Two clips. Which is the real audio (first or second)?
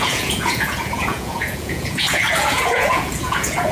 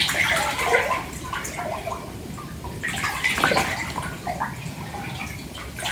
second